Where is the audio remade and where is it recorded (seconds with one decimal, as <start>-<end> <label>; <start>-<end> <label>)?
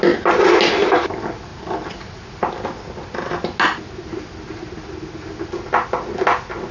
0.0-6.7 recorded